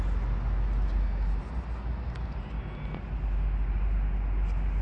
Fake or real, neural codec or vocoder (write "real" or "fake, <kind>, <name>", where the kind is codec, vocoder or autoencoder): real